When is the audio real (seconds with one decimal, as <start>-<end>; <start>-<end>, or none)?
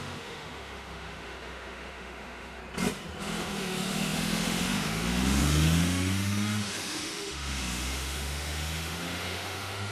2.6-3.2